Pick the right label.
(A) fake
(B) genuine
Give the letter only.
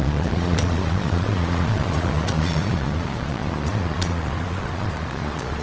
A